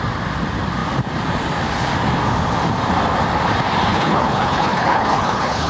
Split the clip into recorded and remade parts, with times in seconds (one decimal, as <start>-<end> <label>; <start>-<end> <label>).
0.0-3.9 recorded; 3.9-5.7 remade